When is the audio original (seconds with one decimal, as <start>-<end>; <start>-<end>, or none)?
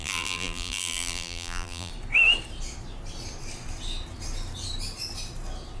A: 1.9-5.8